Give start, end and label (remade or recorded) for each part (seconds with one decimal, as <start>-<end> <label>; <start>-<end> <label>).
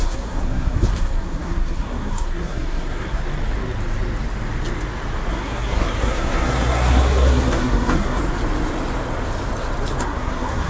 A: 0.0-3.2 remade; 3.2-5.3 recorded; 5.3-8.2 remade; 8.2-10.0 recorded; 10.0-10.7 remade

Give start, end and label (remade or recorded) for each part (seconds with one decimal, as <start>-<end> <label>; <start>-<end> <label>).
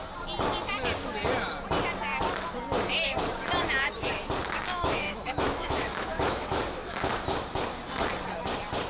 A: 0.0-4.7 recorded; 4.7-7.1 remade; 7.1-8.9 recorded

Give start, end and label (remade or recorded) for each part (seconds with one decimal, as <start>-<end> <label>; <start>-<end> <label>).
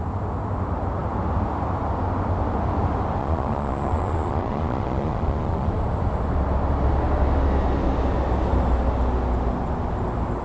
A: 0.0-3.2 recorded; 3.2-5.7 remade; 5.7-10.4 recorded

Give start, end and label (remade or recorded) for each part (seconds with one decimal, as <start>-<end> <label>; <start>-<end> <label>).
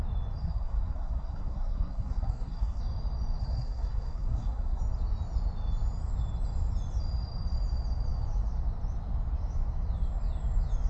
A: 0.0-0.4 recorded; 0.4-2.8 remade; 2.8-3.4 recorded; 3.4-4.8 remade; 4.8-10.9 recorded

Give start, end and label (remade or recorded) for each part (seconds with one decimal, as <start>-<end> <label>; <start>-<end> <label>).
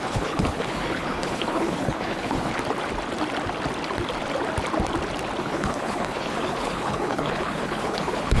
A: 0.0-2.5 remade; 2.5-5.4 recorded; 5.4-8.4 remade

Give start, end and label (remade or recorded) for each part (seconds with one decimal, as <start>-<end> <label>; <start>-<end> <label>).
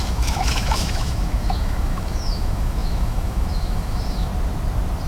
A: 0.0-4.3 remade; 4.3-5.1 recorded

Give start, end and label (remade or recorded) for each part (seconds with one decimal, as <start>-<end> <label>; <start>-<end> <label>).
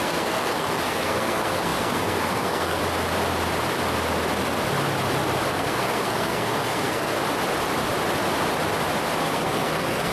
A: 0.0-2.8 remade; 2.8-5.5 recorded; 5.5-7.2 remade; 7.2-9.2 recorded; 9.2-10.1 remade